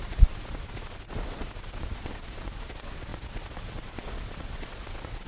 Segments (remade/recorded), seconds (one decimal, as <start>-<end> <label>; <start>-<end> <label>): 0.0-5.3 remade